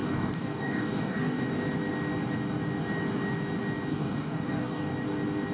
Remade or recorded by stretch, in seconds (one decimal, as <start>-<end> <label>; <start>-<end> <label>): 0.0-1.4 remade; 1.4-3.9 recorded; 3.9-4.9 remade; 4.9-5.5 recorded